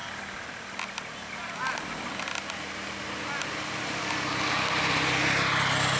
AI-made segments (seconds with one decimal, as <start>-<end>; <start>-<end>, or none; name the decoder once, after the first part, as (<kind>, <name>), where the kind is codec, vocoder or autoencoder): none